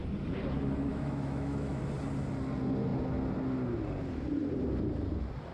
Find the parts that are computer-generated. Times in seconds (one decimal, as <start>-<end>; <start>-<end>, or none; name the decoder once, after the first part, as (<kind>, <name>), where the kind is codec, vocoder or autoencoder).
0.9-1.8 (autoencoder, DAC-VAE)